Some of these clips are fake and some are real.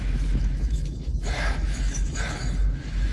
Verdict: fake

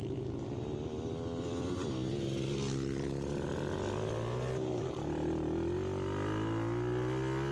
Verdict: real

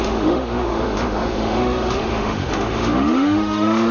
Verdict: fake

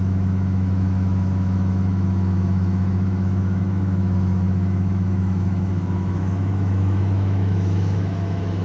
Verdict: fake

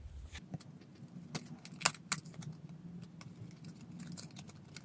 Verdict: real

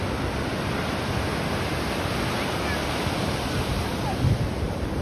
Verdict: real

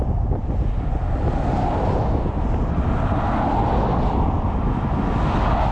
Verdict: real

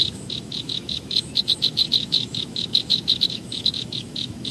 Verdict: fake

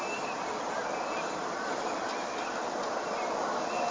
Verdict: real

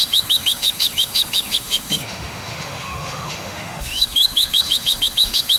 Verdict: fake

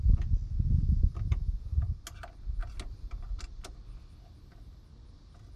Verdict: real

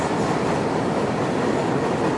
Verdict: real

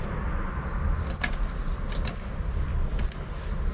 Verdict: real